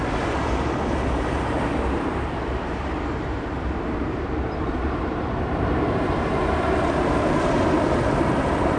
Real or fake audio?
fake